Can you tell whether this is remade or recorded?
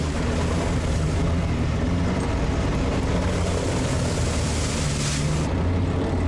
recorded